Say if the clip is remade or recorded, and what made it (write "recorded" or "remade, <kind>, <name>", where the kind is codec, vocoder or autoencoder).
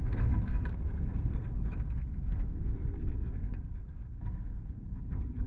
remade, codec, SNAC